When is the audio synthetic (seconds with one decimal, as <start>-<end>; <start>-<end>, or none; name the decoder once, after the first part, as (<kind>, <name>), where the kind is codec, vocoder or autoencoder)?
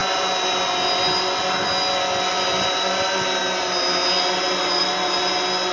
none